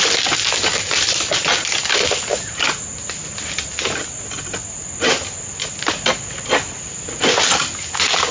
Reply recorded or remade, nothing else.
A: recorded